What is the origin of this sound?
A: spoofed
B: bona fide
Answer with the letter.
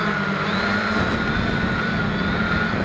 B